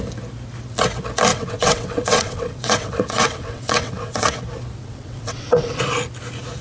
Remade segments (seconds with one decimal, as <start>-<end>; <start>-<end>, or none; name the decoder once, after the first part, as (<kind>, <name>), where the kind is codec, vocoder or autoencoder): 1.3-4.3 (vocoder, WaveNeXt); 4.8-5.7